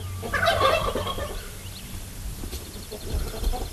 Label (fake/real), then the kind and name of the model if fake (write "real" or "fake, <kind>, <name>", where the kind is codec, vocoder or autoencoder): real